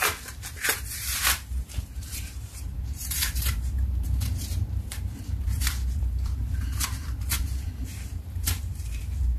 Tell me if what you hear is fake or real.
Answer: fake